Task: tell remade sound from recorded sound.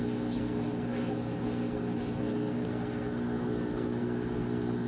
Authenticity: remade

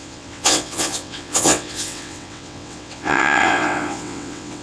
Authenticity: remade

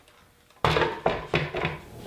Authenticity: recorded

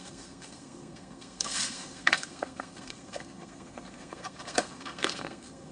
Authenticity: remade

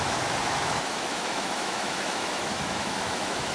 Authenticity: remade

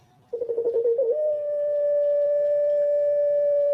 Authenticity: recorded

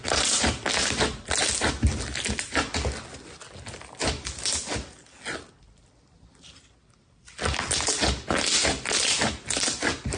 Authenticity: recorded